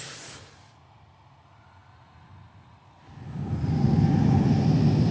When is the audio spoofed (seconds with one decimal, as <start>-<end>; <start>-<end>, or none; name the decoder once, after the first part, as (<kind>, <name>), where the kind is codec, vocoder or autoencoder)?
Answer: none